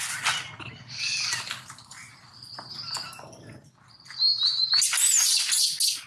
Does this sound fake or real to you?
real